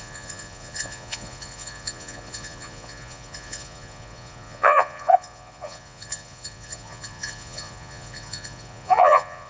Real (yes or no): no